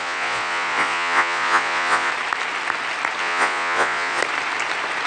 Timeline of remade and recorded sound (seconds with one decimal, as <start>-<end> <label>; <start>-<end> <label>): 0.0-2.1 remade; 2.1-3.2 recorded; 3.2-4.2 remade; 4.2-5.1 recorded